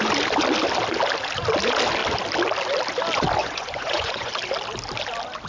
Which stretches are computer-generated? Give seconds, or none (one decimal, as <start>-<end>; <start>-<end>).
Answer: 3.4-4.3